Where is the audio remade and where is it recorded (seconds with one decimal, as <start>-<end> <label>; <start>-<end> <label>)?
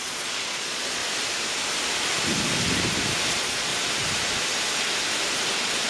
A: 0.0-1.0 remade; 1.0-3.3 recorded; 3.3-3.7 remade; 3.7-5.5 recorded; 5.5-5.9 remade